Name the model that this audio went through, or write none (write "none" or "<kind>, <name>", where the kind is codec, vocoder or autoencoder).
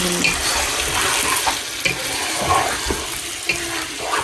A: none